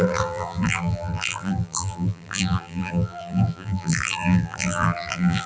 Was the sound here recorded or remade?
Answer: remade